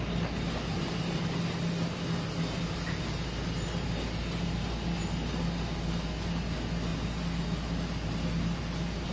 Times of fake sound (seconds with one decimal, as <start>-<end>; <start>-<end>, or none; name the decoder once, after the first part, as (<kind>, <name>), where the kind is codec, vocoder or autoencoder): none